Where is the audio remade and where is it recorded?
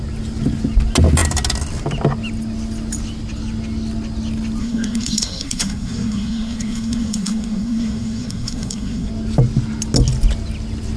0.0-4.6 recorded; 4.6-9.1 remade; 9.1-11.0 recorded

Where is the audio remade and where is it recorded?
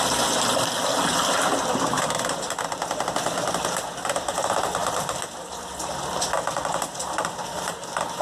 0.0-8.2 recorded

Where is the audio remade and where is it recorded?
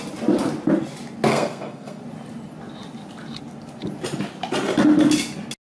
0.0-1.3 recorded; 1.3-2.0 remade; 2.0-5.7 recorded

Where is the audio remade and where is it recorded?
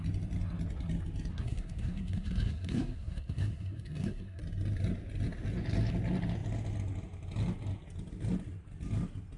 0.0-1.3 recorded; 1.3-4.4 remade; 4.4-9.4 recorded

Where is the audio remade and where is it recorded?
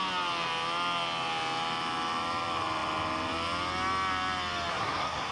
0.0-4.7 recorded; 4.7-5.3 remade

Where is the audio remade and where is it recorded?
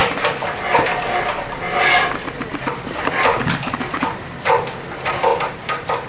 0.0-6.1 recorded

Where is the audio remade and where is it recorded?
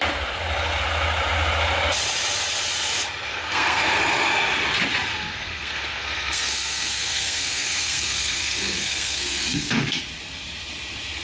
0.0-3.3 recorded; 3.3-4.0 remade; 4.0-5.1 recorded; 5.1-10.0 remade; 10.0-11.2 recorded